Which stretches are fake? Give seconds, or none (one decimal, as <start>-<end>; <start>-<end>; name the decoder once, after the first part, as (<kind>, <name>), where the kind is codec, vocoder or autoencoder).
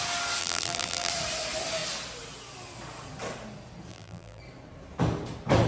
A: 0.4-1.1 (vocoder, BigVGAN v2); 3.9-4.4